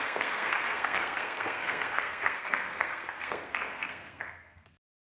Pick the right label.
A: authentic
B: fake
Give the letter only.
B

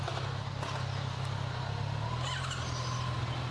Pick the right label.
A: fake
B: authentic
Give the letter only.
B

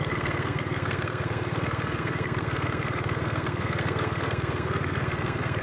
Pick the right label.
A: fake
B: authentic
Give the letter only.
A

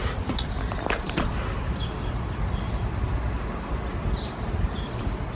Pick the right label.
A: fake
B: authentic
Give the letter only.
B